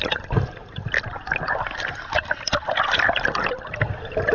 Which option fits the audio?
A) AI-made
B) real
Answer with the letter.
B